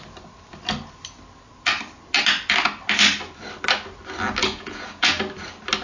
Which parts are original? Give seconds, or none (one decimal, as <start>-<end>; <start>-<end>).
0.0-4.4; 5.1-5.8

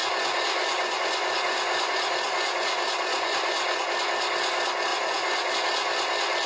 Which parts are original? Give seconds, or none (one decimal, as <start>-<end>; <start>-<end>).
3.9-4.9; 5.5-6.5

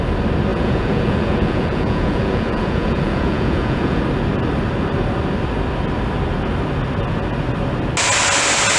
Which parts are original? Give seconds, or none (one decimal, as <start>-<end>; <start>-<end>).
0.0-0.5; 4.0-8.8